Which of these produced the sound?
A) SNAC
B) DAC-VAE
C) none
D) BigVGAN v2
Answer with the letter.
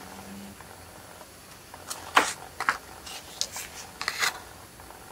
C